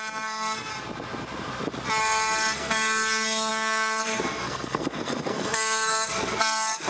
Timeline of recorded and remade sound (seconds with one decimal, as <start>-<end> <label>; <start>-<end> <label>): 0.0-0.7 remade; 0.7-2.0 recorded; 2.0-6.9 remade